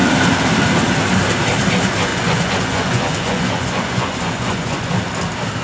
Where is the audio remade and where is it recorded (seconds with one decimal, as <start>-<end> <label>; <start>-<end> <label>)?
0.0-2.1 recorded; 2.1-4.9 remade; 4.9-5.6 recorded